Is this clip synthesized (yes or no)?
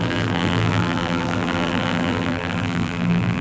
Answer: yes